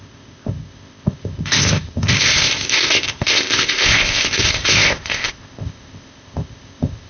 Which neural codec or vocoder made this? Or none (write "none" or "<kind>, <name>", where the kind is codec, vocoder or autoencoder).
codec, ZipCodec